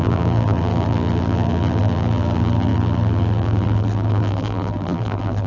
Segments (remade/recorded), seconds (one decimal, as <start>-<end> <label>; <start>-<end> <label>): 0.0-5.5 remade